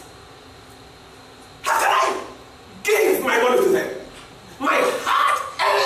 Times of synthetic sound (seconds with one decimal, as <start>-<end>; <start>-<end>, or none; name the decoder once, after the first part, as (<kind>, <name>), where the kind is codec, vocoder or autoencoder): none